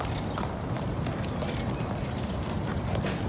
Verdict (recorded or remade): recorded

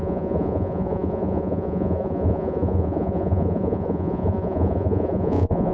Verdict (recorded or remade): remade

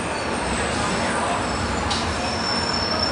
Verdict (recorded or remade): recorded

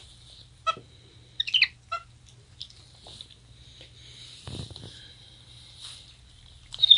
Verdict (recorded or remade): recorded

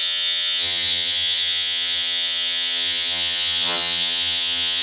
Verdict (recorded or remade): remade